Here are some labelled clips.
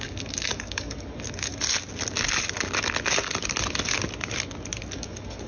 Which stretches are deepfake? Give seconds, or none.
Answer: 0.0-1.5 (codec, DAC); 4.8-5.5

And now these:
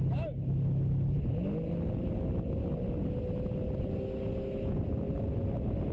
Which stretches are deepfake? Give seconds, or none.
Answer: none

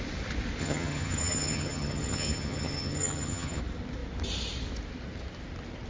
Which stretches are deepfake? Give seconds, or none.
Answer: 0.6-3.6 (vocoder, HiFi-GAN)

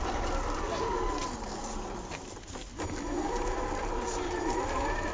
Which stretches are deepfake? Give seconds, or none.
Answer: none

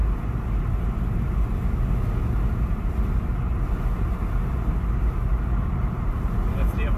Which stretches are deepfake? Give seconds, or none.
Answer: 5.3-7.0 (vocoder, BigVGAN v2)